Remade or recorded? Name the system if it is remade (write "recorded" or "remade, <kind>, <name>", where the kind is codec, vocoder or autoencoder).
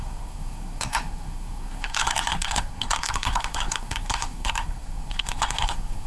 remade, codec, SNAC